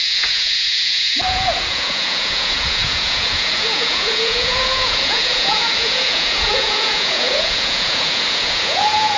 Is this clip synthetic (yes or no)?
yes